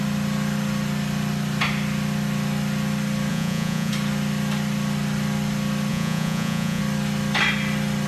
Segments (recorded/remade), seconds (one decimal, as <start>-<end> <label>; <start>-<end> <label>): 0.0-3.3 recorded; 3.3-3.9 remade; 3.9-5.9 recorded; 5.9-6.8 remade; 6.8-8.1 recorded